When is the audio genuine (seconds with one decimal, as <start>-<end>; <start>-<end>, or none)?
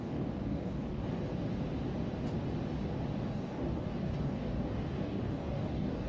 1.0-3.3